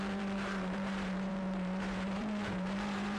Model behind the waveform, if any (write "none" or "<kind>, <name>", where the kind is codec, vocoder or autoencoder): vocoder, BigVGAN v2